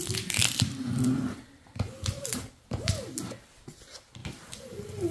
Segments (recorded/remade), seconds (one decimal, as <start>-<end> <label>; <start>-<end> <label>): 0.0-0.4 recorded; 0.4-2.5 remade; 2.5-4.2 recorded; 4.2-5.1 remade